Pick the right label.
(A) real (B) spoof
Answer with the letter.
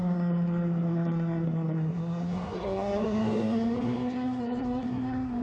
B